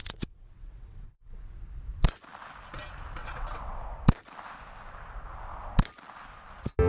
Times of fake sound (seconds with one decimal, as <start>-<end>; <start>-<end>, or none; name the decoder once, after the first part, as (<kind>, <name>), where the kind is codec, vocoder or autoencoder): 0.0-1.4 (vocoder, WaveNeXt); 3.2-3.8